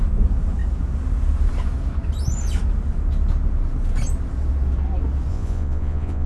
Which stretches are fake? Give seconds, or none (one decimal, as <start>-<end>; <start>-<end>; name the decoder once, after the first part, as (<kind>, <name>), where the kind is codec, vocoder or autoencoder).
5.3-6.3 (vocoder, Vocos)